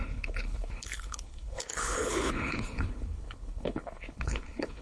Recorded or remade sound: remade